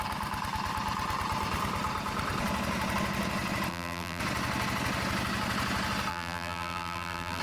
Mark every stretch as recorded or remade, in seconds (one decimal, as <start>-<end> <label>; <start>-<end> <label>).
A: 0.0-3.7 recorded; 3.7-4.2 remade; 4.2-6.1 recorded; 6.1-7.4 remade